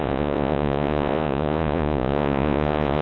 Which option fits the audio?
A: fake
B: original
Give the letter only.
A